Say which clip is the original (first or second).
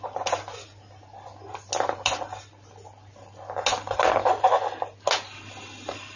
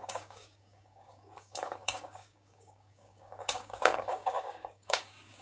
first